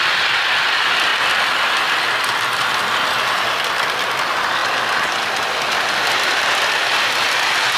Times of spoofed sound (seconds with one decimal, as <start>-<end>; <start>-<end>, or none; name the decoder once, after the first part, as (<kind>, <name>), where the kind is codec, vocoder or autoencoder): none